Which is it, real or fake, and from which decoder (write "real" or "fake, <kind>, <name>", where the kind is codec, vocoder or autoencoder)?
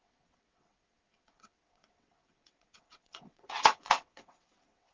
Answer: fake, vocoder, WaveNeXt